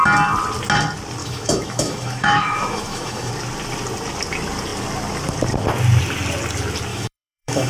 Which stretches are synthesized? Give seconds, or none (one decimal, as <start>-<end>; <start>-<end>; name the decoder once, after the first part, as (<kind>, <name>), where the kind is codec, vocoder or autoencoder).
1.2-3.3 (autoencoder, DAC-VAE); 6.9-7.7